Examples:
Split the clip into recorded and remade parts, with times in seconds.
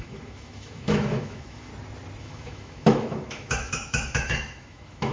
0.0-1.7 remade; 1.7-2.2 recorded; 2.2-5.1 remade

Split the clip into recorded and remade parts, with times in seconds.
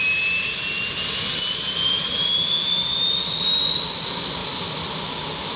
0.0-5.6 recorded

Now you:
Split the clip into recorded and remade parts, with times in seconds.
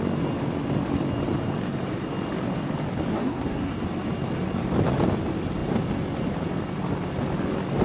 0.0-3.1 recorded; 3.1-3.7 remade; 3.7-7.8 recorded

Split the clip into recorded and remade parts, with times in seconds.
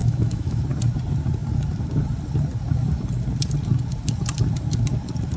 0.0-0.6 remade; 0.6-5.4 recorded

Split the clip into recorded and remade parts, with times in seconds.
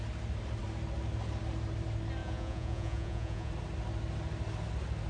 0.0-2.2 recorded; 2.2-3.5 remade; 3.5-5.1 recorded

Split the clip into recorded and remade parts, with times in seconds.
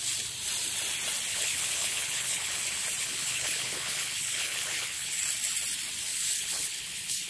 0.0-1.3 recorded; 1.3-2.6 remade; 2.6-3.0 recorded; 3.0-5.2 remade; 5.2-6.1 recorded; 6.1-7.3 remade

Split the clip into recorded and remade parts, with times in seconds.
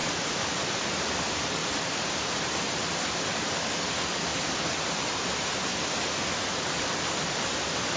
0.0-5.7 remade; 5.7-6.6 recorded; 6.6-8.0 remade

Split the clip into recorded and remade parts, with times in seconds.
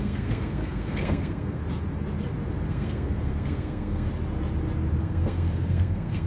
0.0-1.6 remade; 1.6-2.7 recorded; 2.7-4.1 remade; 4.1-5.0 recorded; 5.0-6.3 remade